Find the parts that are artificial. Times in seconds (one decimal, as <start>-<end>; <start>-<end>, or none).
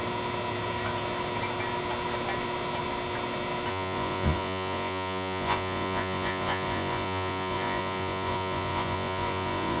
3.7-9.8